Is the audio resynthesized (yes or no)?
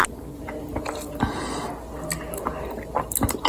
no